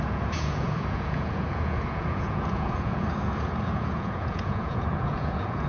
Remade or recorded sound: remade